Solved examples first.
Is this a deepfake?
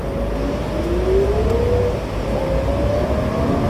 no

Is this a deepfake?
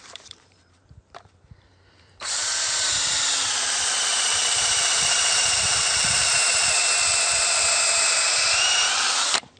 yes